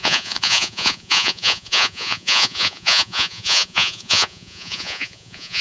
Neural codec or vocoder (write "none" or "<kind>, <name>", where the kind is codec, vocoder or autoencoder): vocoder, Vocos